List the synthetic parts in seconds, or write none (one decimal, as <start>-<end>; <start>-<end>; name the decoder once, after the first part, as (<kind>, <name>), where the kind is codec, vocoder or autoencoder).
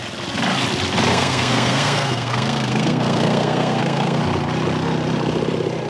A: 1.1-4.2 (codec, SNAC)